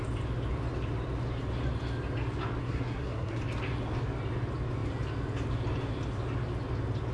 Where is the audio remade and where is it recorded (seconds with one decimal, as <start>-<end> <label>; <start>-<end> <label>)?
0.0-2.6 recorded; 2.6-3.4 remade; 3.4-7.1 recorded